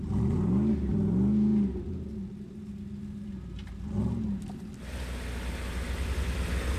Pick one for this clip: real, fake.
real